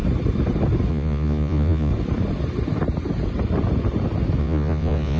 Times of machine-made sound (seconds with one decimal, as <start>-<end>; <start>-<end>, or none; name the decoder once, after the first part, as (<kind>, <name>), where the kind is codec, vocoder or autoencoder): 0.9-1.9 (vocoder, Vocos); 4.4-5.2